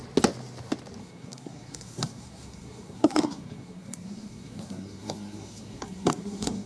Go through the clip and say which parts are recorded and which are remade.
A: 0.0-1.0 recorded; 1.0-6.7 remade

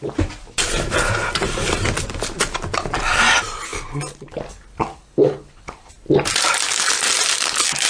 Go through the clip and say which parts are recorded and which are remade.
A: 0.0-4.9 recorded; 4.9-5.9 remade; 5.9-7.9 recorded

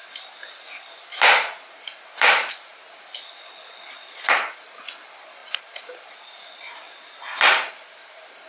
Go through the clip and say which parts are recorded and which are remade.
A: 0.0-8.5 recorded